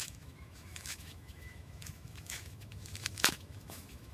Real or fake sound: fake